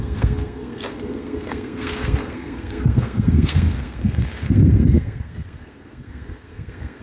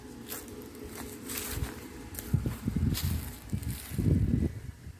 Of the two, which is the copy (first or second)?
first